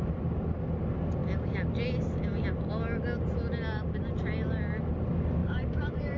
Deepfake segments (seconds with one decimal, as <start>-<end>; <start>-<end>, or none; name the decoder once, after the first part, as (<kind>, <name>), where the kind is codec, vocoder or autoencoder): 5.4-6.2 (vocoder, BigVGAN v2)